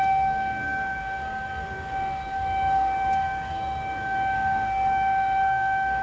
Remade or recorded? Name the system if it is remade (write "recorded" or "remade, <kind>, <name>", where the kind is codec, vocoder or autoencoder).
remade, codec, SNAC